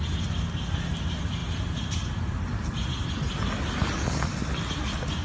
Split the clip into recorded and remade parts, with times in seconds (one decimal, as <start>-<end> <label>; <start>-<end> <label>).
0.0-5.2 recorded